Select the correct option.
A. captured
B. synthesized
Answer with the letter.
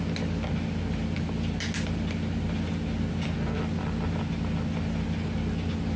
A